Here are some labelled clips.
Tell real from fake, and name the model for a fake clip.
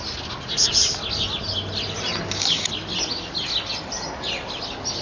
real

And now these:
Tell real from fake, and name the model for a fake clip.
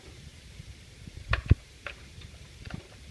fake, vocoder, BigVGAN v2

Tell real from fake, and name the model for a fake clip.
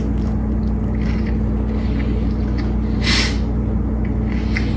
real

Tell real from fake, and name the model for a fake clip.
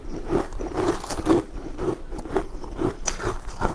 fake, vocoder, BigVGAN v2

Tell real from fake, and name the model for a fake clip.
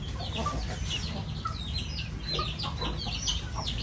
real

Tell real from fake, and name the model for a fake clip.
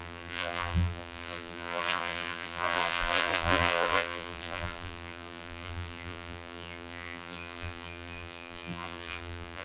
fake, vocoder, BigVGAN v2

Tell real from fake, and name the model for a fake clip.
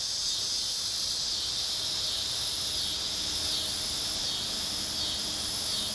real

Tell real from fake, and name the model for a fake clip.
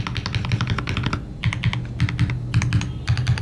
real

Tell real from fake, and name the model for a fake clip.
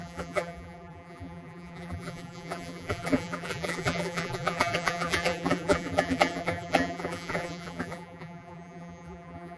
fake, vocoder, BigVGAN v2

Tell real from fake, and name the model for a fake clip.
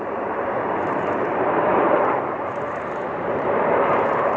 fake, vocoder, BigVGAN v2